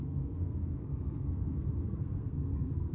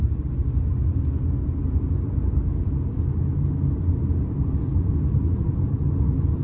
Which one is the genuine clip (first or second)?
second